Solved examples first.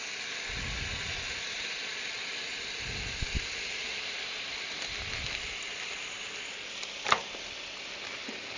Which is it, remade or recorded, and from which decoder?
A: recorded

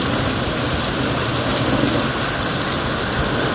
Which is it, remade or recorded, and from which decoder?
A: recorded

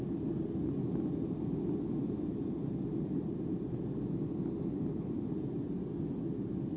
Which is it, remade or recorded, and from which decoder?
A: recorded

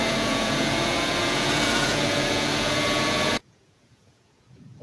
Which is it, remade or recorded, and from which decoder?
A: remade, vocoder, Vocos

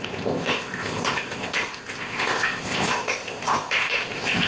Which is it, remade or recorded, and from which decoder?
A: remade, codec, ZipCodec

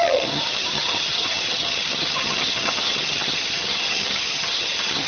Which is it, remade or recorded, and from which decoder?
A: remade, vocoder, HiFi-GAN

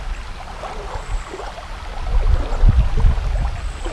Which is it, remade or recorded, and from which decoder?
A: recorded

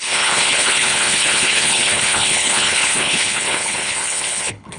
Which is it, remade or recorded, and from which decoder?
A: remade, codec, HILCodec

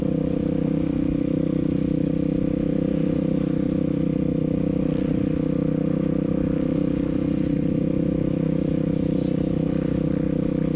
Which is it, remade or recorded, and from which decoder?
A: recorded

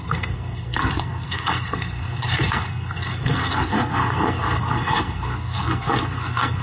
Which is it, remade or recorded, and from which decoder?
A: remade, codec, SNAC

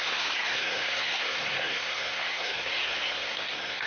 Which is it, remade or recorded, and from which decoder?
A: remade, codec, SNAC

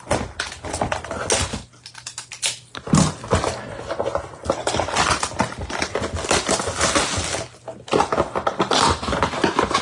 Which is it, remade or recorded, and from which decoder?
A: recorded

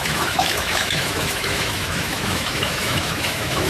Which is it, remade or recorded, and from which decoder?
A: remade, autoencoder, DAC-VAE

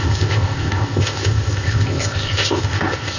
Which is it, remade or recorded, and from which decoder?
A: remade, codec, ZipCodec